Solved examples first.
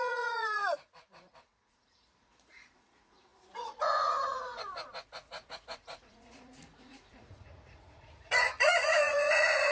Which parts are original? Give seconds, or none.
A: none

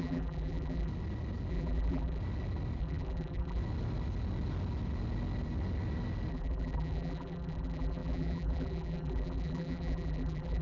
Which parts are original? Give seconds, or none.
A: 0.9-1.5; 2.2-2.8; 3.6-6.3

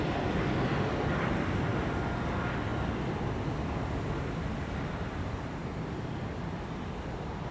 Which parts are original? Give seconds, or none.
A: 0.0-7.5

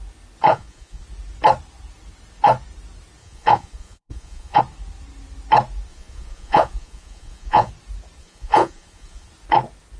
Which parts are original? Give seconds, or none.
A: 0.0-0.5; 1.0-3.2; 4.6-5.9; 7.7-8.2; 9.3-10.0

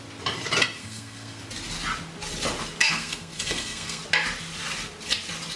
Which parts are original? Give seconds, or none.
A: 0.0-0.8; 1.4-2.8; 4.0-5.6